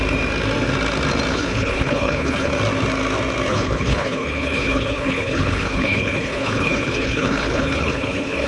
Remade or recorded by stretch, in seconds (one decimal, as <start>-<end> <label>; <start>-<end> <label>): 0.0-1.3 recorded; 1.3-2.5 remade; 2.5-3.5 recorded; 3.5-8.5 remade